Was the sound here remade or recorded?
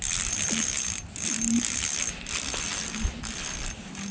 recorded